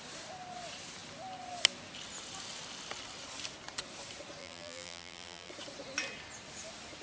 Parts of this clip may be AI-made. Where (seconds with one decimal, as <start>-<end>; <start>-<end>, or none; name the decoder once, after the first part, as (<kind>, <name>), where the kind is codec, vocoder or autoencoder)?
4.4-5.5 (vocoder, BigVGAN v2)